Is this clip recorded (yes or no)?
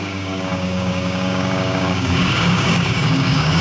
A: no